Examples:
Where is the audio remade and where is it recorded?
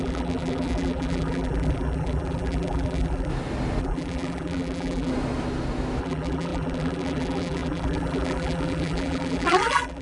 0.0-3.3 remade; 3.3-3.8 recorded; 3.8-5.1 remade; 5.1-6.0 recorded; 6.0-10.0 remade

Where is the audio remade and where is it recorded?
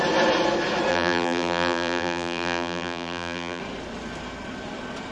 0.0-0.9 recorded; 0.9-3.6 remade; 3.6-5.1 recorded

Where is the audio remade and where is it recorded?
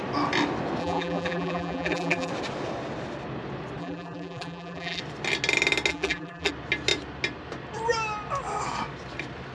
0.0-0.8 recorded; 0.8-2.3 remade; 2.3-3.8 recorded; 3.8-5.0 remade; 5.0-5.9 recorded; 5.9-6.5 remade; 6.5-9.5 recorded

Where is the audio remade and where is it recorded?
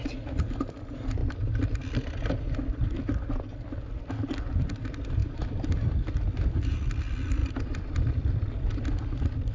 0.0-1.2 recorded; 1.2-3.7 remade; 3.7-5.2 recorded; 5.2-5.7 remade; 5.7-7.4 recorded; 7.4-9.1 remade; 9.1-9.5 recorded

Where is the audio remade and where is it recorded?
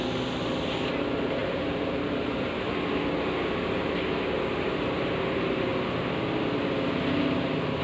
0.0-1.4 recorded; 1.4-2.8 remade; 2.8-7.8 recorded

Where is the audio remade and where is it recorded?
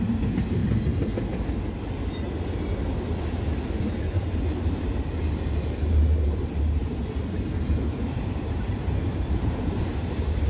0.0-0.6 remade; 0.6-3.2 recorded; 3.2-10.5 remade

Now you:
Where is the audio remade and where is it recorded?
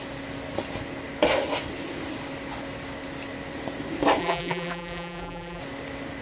0.0-4.2 recorded; 4.2-5.6 remade; 5.6-6.2 recorded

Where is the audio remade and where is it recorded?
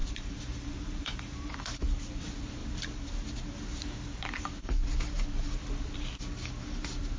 0.0-1.6 remade; 1.6-7.2 recorded